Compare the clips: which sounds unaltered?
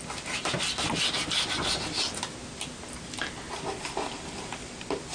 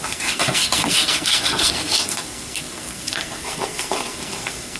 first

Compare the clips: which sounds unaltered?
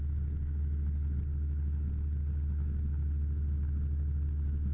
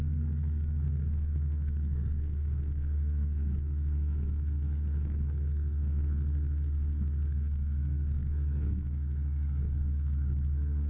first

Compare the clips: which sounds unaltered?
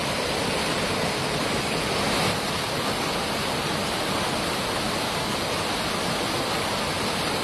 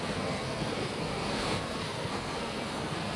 first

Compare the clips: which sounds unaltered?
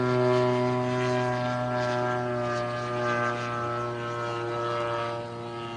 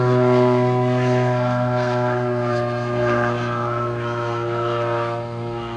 first